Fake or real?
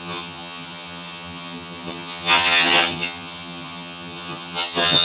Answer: fake